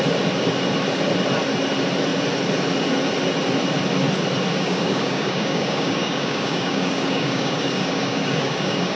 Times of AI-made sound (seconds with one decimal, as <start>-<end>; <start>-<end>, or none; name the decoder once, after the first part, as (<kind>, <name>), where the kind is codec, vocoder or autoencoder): 4.5-9.0 (codec, DAC)